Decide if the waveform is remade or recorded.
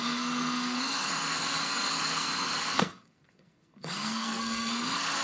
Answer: remade